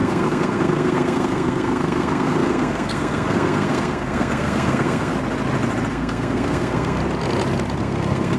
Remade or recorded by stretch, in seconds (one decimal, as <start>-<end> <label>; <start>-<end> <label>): 0.0-5.1 remade; 5.1-5.9 recorded; 5.9-7.0 remade; 7.0-7.8 recorded; 7.8-8.4 remade

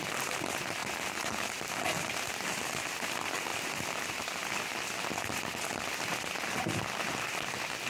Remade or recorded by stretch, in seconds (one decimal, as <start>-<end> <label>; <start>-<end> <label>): 0.0-0.8 recorded; 0.8-1.7 remade; 1.7-7.9 recorded